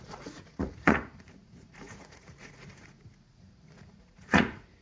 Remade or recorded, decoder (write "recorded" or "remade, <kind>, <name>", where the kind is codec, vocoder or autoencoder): remade, vocoder, Vocos